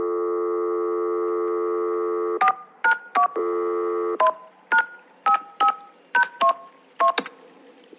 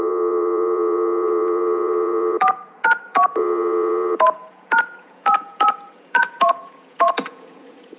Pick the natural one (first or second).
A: first